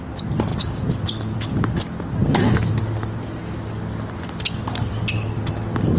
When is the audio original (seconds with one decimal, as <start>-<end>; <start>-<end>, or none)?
0.0-6.0